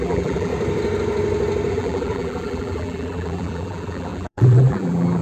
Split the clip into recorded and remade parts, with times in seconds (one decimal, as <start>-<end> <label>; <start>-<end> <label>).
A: 0.0-0.5 remade; 0.5-1.7 recorded; 1.7-5.2 remade